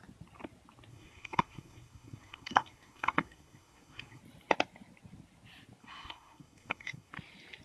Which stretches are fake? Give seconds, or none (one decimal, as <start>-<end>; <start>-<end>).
0.9-4.2; 5.8-7.1